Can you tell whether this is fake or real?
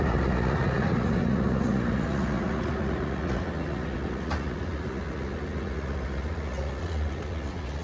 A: fake